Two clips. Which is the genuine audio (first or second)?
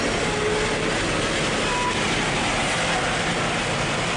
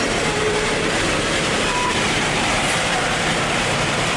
first